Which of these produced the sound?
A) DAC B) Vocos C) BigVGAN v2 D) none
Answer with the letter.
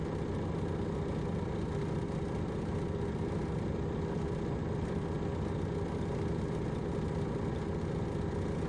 D